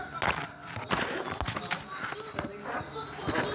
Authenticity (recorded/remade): recorded